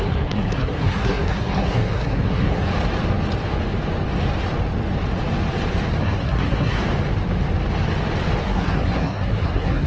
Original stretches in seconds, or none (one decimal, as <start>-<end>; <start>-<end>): 2.7-6.0; 6.8-8.4